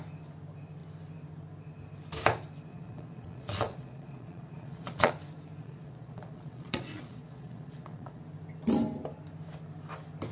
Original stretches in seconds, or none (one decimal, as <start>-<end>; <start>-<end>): 0.0-2.7; 5.1-5.6; 8.2-10.3